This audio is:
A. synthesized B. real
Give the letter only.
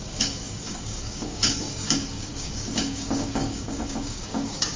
A